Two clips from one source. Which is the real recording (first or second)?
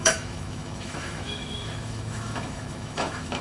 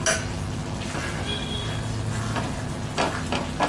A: second